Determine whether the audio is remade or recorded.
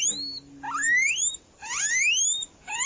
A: recorded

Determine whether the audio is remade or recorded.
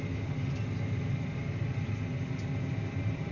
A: recorded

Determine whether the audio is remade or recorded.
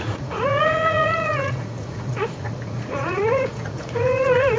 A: remade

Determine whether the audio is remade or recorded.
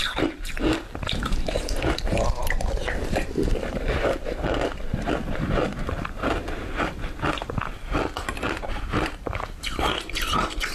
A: remade